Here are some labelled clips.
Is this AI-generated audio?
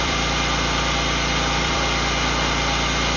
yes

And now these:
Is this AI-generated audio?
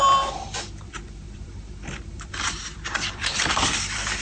yes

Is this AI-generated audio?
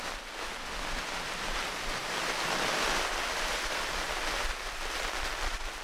no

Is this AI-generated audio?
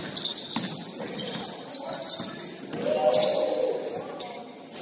no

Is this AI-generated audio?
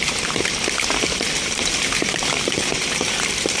yes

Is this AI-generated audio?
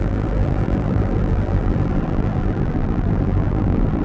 yes